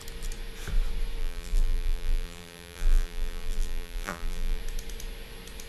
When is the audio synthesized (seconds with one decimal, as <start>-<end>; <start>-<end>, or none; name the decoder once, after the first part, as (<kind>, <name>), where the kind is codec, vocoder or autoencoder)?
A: 1.2-4.6 (vocoder, BigVGAN v2)